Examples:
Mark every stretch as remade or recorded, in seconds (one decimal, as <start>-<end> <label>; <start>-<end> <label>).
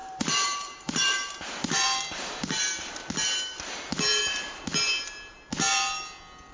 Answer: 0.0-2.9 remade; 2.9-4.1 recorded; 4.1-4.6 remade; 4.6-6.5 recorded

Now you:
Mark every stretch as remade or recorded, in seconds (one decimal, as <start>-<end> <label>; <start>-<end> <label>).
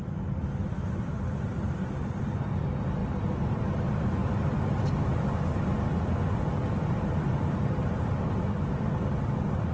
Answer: 0.0-9.7 recorded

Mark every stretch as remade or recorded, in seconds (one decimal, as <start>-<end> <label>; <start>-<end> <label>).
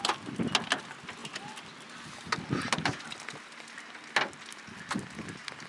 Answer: 0.0-5.7 recorded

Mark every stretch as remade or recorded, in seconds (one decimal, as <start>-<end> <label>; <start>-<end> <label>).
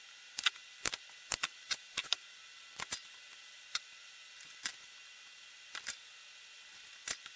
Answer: 0.0-7.4 remade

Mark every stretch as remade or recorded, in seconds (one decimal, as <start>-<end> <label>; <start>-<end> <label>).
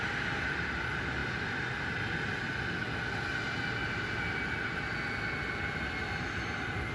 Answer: 0.0-6.9 recorded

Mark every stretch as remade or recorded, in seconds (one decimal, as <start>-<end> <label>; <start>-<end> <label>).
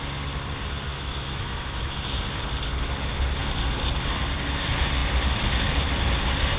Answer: 0.0-0.9 recorded; 0.9-2.2 remade; 2.2-6.6 recorded